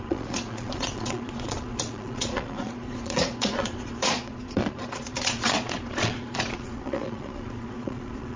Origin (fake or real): fake